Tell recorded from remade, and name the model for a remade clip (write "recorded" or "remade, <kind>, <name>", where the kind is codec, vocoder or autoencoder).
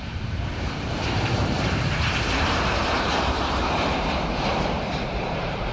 remade, vocoder, BigVGAN v2